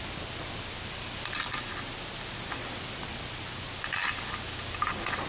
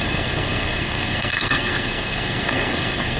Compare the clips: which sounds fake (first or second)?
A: second